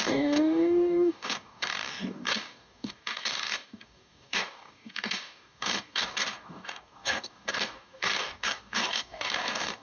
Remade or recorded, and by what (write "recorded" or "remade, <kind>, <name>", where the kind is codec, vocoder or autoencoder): remade, codec, DAC